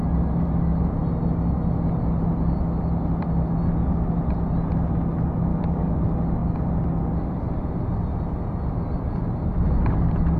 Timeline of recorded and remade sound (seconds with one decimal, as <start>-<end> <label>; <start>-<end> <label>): 0.0-5.5 recorded; 5.5-6.0 remade; 6.0-10.4 recorded